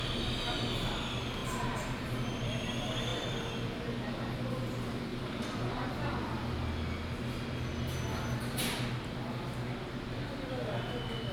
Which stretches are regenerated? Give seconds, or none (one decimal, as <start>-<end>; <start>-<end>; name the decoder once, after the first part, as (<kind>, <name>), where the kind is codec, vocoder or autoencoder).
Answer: 1.4-2.7 (vocoder, BigVGAN v2); 3.1-3.7; 5.1-6.5